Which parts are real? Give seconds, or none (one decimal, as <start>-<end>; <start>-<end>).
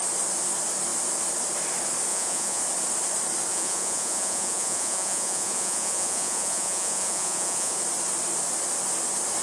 0.0-2.1; 2.6-3.5; 7.8-9.4